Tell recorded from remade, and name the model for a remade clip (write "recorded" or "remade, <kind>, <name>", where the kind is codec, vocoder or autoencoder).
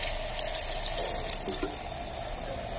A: recorded